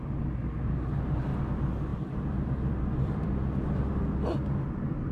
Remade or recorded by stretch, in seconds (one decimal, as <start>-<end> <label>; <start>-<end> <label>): 0.0-1.9 recorded; 1.9-3.9 remade; 3.9-5.1 recorded